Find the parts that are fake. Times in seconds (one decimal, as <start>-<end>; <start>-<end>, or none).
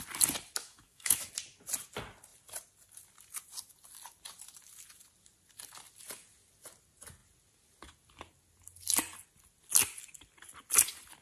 0.6-1.3